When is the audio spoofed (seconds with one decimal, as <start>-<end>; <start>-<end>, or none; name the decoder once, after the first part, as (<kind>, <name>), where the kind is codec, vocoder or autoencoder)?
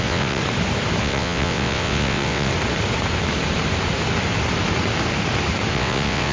0.0-0.4 (vocoder, WaveNeXt); 1.0-2.5; 5.7-6.3